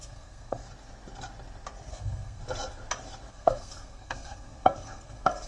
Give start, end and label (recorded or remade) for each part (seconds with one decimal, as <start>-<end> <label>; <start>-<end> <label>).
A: 0.0-0.6 remade; 0.6-1.9 recorded; 1.9-2.4 remade; 2.4-3.3 recorded; 3.3-5.5 remade